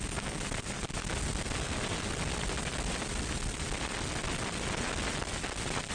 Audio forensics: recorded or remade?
recorded